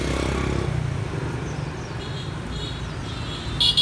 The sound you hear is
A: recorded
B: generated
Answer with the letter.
A